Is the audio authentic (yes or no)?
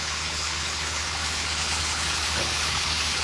no